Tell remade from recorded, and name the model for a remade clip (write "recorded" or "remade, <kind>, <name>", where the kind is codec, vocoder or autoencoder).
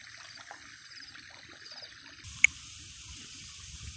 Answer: recorded